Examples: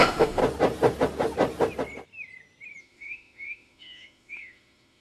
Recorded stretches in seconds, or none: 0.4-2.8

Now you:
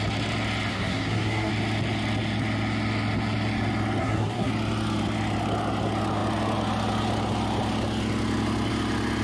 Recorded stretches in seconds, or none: 0.0-0.7; 1.5-4.0; 4.5-9.2

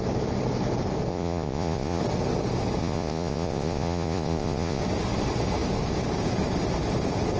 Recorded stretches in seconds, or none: 0.0-1.1; 2.0-2.8; 4.8-7.4

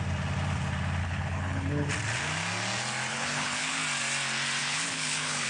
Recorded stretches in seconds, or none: 0.0-1.0; 1.9-3.1; 3.8-4.6

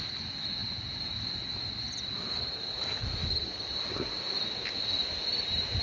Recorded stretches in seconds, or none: 0.0-5.8

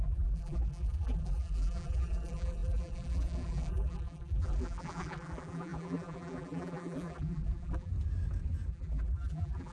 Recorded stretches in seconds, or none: 7.9-8.7

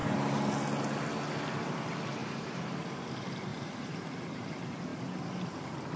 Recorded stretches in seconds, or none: 0.0-2.2; 2.8-3.5; 4.5-6.0

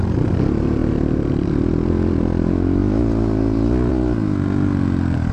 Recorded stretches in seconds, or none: 0.0-5.3